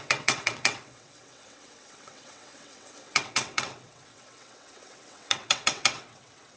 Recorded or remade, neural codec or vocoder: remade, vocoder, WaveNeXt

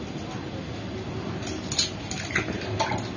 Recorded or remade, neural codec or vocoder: recorded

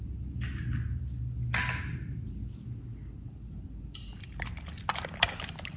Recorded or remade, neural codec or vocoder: recorded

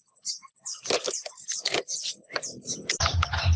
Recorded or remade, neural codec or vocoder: recorded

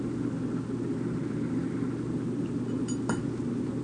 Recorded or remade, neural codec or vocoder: recorded